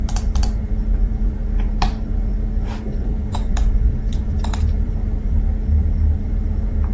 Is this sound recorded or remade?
remade